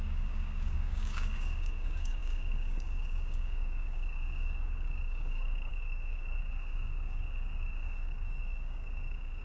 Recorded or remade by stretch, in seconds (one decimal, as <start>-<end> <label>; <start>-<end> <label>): 0.0-9.4 remade